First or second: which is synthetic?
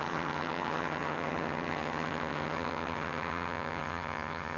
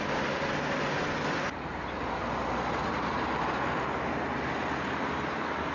first